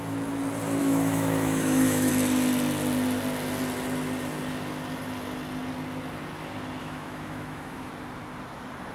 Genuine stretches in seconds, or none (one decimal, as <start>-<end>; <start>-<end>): 0.0-0.8; 2.1-6.8; 7.9-8.9